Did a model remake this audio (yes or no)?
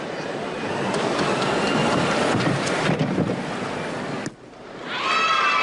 no